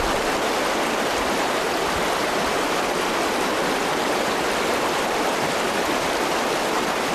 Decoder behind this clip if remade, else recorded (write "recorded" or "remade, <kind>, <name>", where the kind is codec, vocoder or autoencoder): remade, vocoder, BigVGAN v2